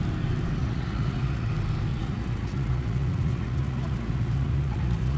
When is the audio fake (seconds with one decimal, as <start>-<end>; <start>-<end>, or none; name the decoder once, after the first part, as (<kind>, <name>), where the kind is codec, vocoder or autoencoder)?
0.6-1.5 (vocoder, Vocos); 1.9-5.2